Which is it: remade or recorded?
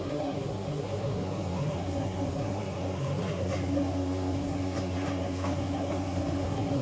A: remade